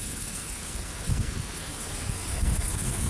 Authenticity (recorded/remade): remade